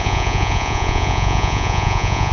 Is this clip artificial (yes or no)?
yes